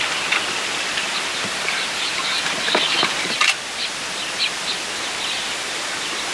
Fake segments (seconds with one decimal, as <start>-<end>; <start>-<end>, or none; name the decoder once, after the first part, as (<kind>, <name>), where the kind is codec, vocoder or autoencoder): none